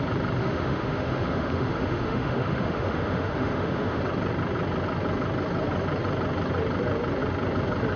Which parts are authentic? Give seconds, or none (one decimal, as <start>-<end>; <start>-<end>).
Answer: 0.0-0.4; 4.0-8.0